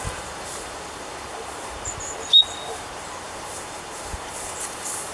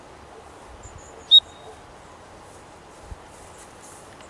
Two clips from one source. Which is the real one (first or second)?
second